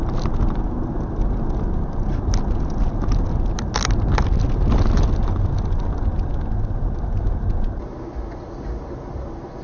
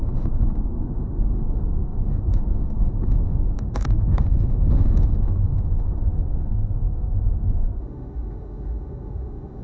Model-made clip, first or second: second